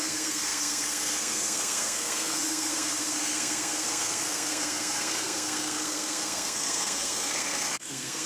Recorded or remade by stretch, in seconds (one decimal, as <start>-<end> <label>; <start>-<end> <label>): 0.0-8.3 remade